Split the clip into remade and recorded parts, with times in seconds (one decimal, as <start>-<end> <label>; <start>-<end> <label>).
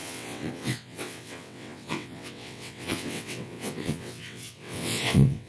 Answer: 0.0-5.5 remade